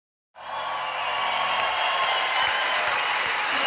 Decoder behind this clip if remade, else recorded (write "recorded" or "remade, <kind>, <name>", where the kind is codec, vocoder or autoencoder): recorded